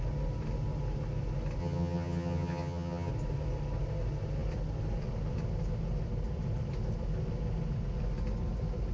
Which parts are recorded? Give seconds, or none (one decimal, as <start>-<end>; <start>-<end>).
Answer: 0.0-1.6; 3.1-8.9